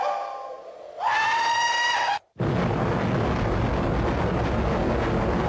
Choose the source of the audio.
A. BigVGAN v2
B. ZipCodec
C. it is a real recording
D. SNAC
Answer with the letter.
C